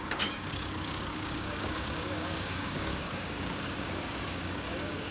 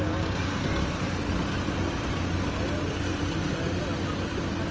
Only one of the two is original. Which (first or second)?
second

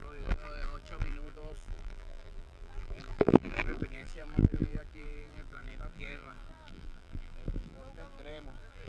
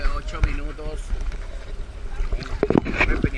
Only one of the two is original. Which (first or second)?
second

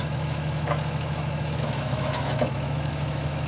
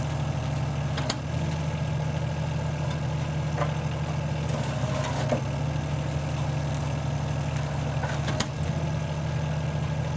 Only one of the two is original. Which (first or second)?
second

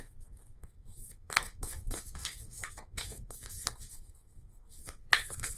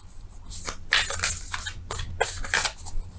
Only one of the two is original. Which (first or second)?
second